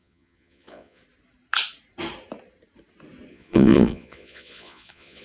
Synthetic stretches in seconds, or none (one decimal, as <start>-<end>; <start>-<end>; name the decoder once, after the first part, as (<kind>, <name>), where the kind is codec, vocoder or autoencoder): 0.0-1.0 (vocoder, Vocos); 3.3-5.2